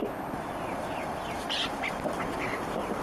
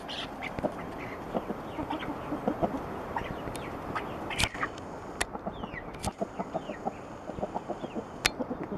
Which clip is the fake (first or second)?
first